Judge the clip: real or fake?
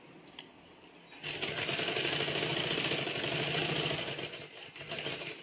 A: real